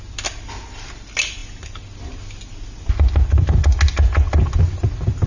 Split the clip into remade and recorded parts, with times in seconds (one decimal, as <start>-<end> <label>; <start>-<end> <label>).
0.0-5.3 recorded